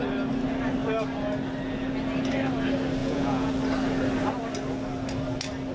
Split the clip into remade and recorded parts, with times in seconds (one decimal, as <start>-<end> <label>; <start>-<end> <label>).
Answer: 0.0-3.0 recorded; 3.0-3.5 remade; 3.5-5.7 recorded